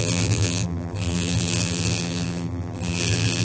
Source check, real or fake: fake